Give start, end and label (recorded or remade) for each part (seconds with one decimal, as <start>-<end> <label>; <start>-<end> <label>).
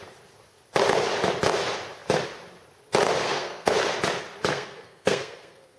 0.0-3.2 recorded; 3.2-3.7 remade; 3.7-4.5 recorded; 4.5-5.8 remade